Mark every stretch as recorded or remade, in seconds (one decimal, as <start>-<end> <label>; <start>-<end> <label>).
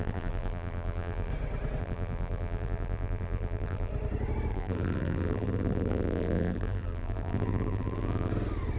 0.0-1.3 remade; 1.3-1.8 recorded; 1.8-3.9 remade; 3.9-4.5 recorded; 4.5-8.3 remade; 8.3-8.8 recorded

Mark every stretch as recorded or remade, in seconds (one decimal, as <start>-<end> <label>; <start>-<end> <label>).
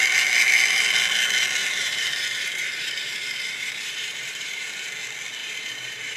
0.0-1.6 recorded; 1.6-4.9 remade; 4.9-5.4 recorded; 5.4-6.2 remade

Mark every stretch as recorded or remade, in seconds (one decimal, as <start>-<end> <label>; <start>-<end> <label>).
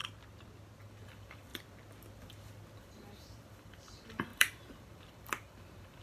0.0-1.0 recorded; 1.0-1.5 remade; 1.5-2.8 recorded; 2.8-6.0 remade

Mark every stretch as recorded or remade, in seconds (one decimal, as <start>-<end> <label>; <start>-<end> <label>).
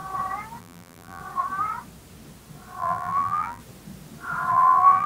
0.0-0.6 recorded; 0.6-1.2 remade; 1.2-2.8 recorded; 2.8-3.6 remade; 3.6-4.5 recorded; 4.5-5.1 remade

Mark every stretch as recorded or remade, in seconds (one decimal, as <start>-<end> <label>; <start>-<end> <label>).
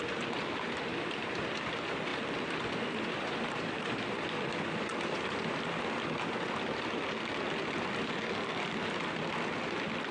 0.0-2.1 recorded; 2.1-7.0 remade; 7.0-10.1 recorded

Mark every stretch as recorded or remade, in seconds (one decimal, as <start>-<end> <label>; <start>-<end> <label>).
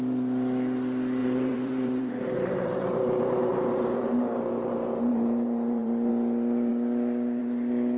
0.0-1.2 recorded; 1.2-3.5 remade; 3.5-5.1 recorded; 5.1-6.1 remade; 6.1-8.0 recorded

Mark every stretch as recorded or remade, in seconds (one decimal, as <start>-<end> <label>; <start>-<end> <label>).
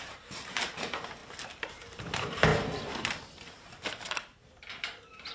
0.0-1.2 remade; 1.2-1.7 recorded; 1.7-5.3 remade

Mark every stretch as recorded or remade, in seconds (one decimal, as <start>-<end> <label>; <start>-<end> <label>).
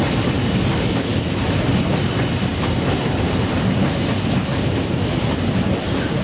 0.0-6.2 recorded